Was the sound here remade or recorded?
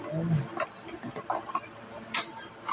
recorded